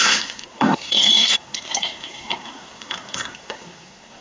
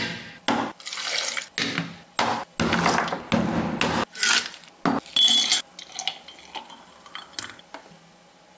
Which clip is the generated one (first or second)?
first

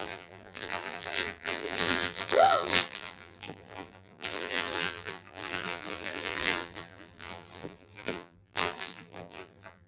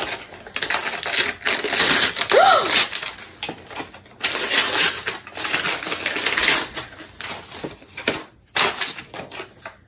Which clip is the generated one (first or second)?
first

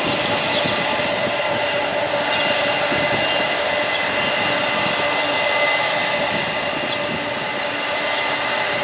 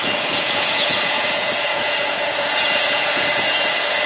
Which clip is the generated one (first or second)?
second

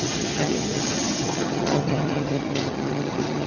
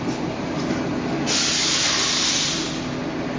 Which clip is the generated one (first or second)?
first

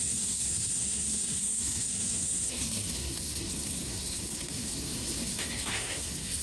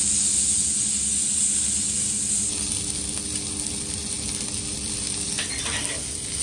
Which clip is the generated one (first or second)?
first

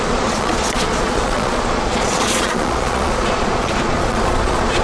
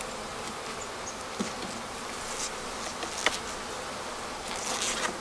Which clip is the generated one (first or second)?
first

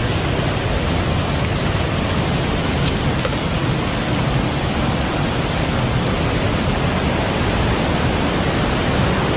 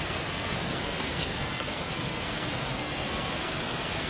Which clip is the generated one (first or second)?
second